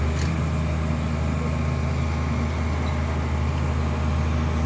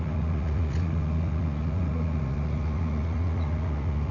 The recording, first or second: first